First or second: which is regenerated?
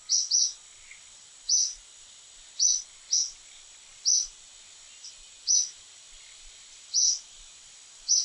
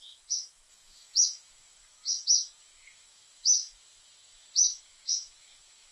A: second